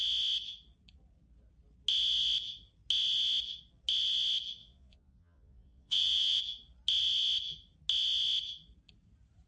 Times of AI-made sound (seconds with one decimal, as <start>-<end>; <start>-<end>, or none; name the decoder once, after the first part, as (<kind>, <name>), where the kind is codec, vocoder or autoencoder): 4.6-6.4 (vocoder, Vocos)